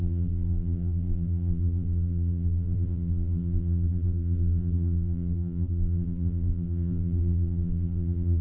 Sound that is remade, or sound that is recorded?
remade